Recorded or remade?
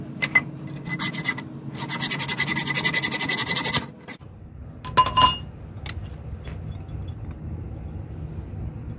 recorded